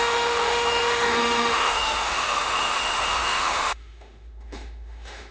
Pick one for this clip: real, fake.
fake